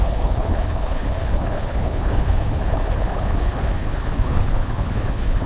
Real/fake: fake